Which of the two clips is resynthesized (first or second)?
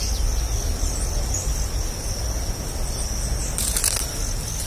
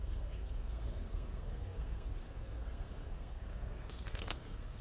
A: second